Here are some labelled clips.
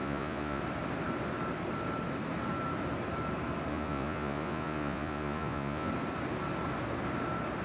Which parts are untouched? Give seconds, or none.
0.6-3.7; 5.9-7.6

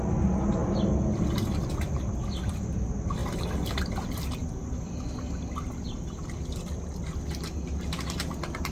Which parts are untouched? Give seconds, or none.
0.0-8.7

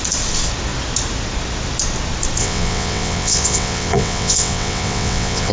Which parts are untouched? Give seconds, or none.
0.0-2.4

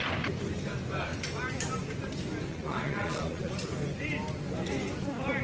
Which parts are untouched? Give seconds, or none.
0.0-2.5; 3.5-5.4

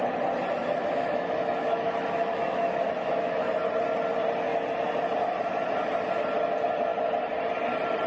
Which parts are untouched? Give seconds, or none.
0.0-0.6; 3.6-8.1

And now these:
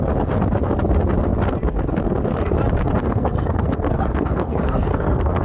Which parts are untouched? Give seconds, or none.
0.0-3.0

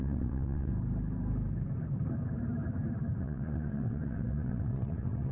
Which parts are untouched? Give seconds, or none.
0.7-3.2

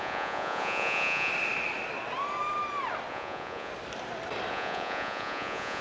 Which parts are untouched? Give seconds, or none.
1.3-3.1; 3.7-4.5